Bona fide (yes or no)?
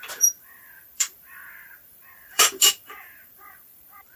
no